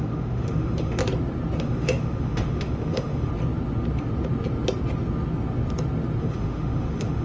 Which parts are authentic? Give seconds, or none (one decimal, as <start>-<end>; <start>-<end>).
1.0-1.6; 3.3-6.2